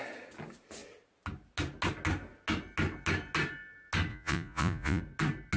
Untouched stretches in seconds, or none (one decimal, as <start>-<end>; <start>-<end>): 0.0-4.1; 5.0-5.6